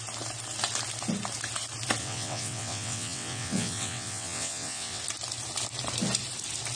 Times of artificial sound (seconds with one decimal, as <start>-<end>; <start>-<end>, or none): 2.0-5.0